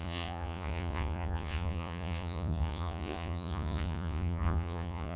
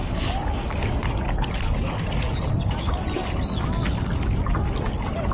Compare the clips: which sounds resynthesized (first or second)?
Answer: first